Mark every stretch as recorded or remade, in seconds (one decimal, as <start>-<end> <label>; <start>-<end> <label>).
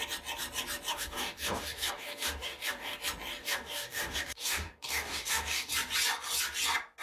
0.0-0.9 recorded; 0.9-3.0 remade; 3.0-3.4 recorded; 3.4-5.7 remade; 5.7-7.0 recorded